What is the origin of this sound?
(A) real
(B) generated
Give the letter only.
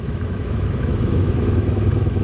B